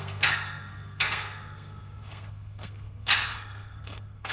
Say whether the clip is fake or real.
fake